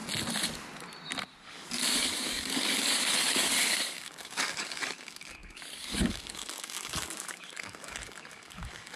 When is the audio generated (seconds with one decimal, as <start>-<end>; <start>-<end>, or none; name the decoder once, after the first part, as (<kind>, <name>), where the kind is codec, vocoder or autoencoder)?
1.4-9.0 (codec, DAC)